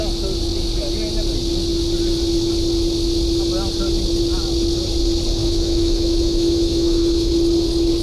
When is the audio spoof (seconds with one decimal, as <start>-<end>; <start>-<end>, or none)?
5.4-7.3